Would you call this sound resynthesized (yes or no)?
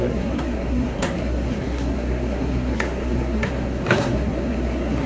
yes